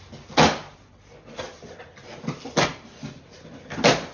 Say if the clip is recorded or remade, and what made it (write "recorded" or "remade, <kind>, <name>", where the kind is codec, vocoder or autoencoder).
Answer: recorded